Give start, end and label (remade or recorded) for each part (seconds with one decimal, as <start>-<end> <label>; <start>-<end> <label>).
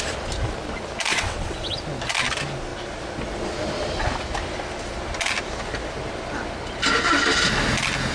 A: 0.0-1.1 recorded; 1.1-1.8 remade; 1.8-8.1 recorded